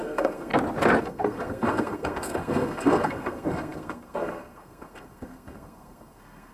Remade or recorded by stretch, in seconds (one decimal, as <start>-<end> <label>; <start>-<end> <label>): 0.0-0.5 remade; 0.5-1.0 recorded; 1.0-6.5 remade